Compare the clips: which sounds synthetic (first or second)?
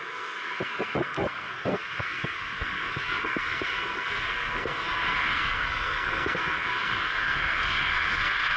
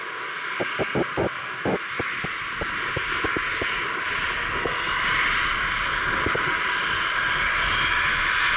first